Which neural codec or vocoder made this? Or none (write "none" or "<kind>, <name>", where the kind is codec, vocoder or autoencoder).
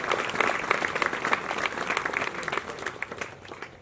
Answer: none